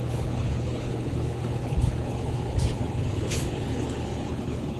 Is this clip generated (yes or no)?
yes